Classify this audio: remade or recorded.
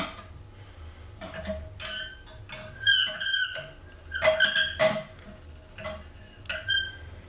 recorded